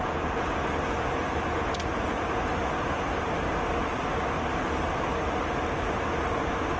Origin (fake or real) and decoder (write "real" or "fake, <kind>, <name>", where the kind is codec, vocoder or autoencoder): real